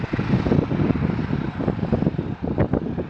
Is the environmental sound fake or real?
real